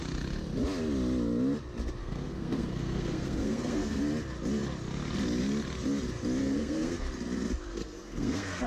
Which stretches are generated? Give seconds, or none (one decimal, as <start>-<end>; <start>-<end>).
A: 2.0-4.0; 6.4-7.1; 7.7-8.7